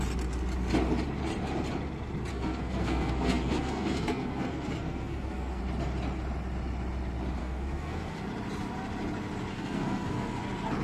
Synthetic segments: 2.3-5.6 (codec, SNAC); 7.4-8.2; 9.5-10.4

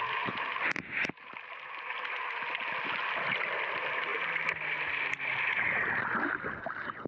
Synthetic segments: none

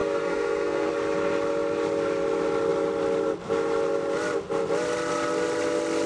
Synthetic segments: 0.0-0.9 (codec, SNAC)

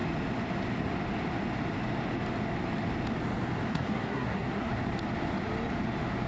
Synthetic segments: 3.7-4.7 (codec, SNAC)